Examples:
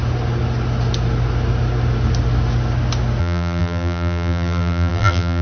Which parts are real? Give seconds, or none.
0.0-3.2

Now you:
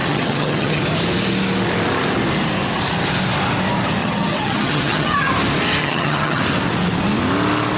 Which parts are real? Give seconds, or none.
0.8-4.0; 5.3-5.8; 6.4-7.8

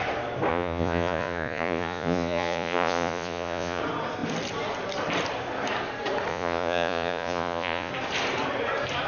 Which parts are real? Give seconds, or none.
0.0-0.5; 3.8-6.3; 7.9-9.1